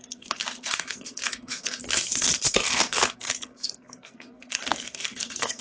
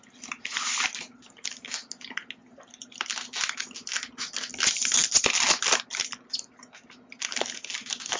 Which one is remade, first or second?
first